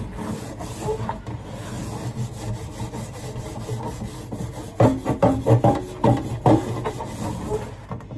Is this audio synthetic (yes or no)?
no